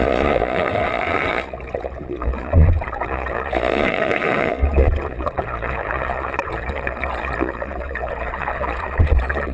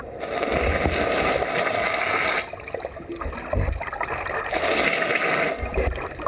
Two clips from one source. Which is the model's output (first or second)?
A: first